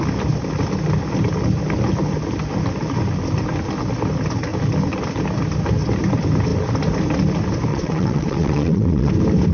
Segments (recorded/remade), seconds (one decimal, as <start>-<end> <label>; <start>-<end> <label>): 0.0-7.7 recorded; 7.7-9.1 remade; 9.1-9.5 recorded